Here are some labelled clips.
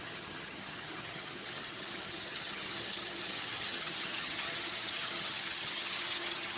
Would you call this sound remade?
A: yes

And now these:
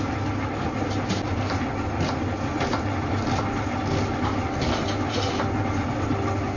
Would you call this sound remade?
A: no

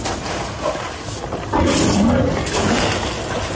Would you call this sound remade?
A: no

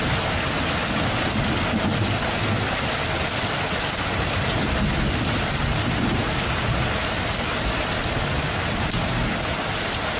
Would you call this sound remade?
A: no